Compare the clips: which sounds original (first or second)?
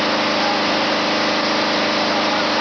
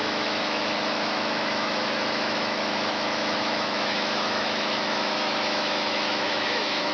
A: first